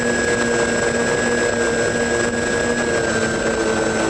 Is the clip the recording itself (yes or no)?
yes